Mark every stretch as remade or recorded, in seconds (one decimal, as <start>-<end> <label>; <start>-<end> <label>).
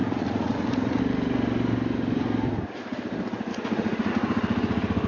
0.0-1.0 remade; 1.0-3.5 recorded; 3.5-4.1 remade; 4.1-5.1 recorded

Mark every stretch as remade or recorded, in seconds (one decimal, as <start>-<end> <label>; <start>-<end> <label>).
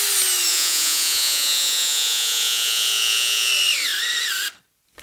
0.0-0.5 recorded; 0.5-3.5 remade; 3.5-5.0 recorded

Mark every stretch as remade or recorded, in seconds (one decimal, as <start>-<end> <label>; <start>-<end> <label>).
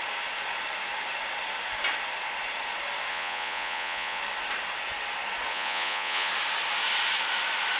0.0-3.1 recorded; 3.1-4.2 remade; 4.2-5.5 recorded; 5.5-6.3 remade; 6.3-7.8 recorded